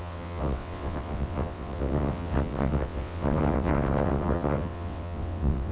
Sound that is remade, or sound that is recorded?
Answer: remade